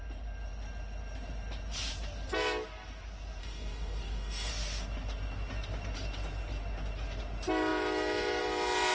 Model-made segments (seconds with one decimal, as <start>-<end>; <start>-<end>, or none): 3.4-4.5